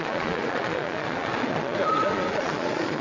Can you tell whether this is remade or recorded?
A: remade